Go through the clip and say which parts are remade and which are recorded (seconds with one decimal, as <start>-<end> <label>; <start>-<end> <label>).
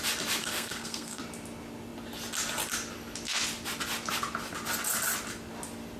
0.0-0.4 recorded; 0.4-1.2 remade; 1.2-6.0 recorded